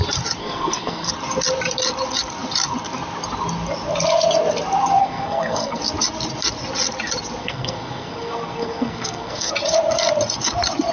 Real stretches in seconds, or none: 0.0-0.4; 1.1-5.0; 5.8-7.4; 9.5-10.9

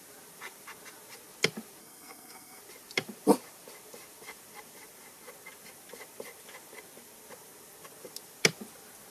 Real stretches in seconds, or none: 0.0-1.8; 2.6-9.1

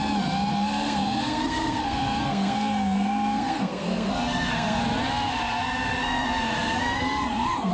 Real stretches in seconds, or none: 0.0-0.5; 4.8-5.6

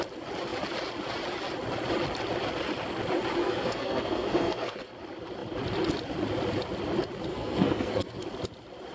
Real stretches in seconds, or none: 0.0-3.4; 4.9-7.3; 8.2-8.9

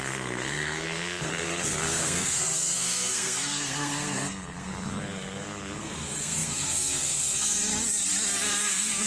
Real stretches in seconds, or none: 7.7-8.6

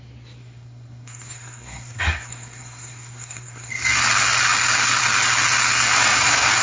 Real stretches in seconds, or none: 0.0-0.4; 3.7-6.6

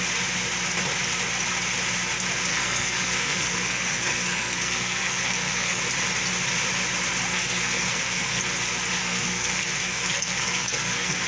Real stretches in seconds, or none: 0.0-2.5; 5.8-7.3; 8.4-9.0

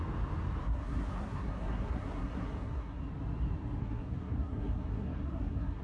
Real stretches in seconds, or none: 0.0-0.6; 3.0-3.8